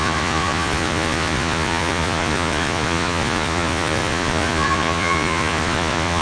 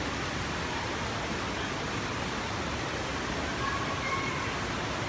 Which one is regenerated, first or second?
first